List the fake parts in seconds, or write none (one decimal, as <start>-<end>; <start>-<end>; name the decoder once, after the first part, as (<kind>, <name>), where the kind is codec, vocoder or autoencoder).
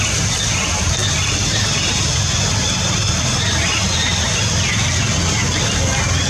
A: none